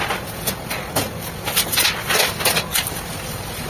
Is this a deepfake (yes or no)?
no